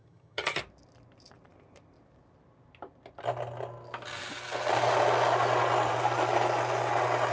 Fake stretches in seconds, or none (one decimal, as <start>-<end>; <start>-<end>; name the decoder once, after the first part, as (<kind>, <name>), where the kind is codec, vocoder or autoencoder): 0.0-0.6 (vocoder, HiFi-GAN)